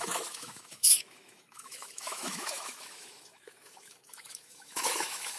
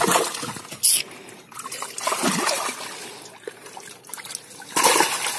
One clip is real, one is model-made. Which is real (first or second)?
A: second